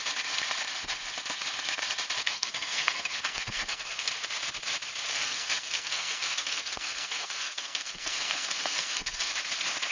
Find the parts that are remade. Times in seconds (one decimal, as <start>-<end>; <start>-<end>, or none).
2.2-4.1; 5.1-9.3